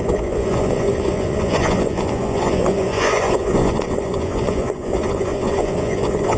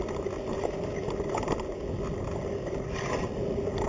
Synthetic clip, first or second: first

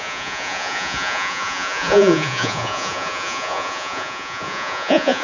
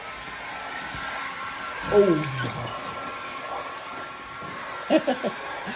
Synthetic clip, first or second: first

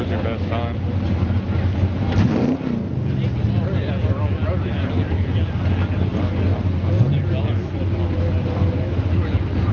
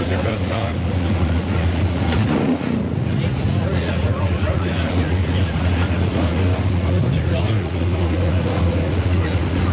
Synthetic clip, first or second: second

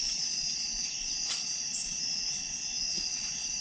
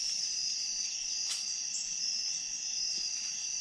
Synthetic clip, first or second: first